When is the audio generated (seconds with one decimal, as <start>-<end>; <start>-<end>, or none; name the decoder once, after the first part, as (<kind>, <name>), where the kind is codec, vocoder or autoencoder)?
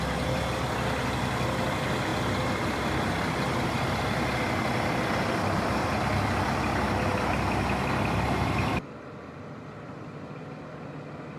none